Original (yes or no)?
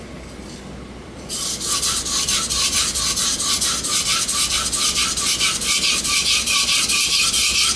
yes